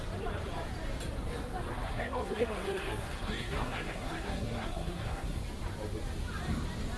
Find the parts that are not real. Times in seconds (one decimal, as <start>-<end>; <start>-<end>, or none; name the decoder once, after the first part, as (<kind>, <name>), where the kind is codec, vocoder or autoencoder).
1.7-5.4 (codec, SNAC)